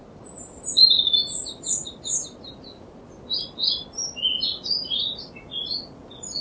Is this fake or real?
real